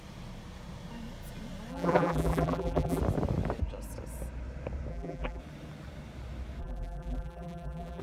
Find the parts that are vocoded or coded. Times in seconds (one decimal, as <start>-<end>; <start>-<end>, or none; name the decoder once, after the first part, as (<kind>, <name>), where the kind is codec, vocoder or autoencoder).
1.7-3.0 (vocoder, BigVGAN v2); 4.9-5.4; 6.6-8.0